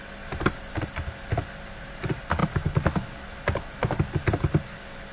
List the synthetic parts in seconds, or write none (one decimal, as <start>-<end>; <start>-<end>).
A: none